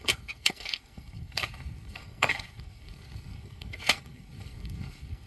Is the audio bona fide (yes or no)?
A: no